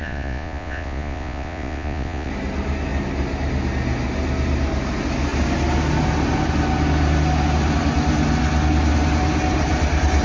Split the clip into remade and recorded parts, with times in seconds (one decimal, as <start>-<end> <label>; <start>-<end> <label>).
0.0-2.3 remade; 2.3-10.2 recorded